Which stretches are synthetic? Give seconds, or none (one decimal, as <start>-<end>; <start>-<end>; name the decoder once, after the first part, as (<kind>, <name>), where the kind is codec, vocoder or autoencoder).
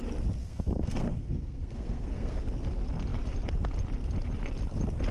0.4-2.4 (codec, SNAC)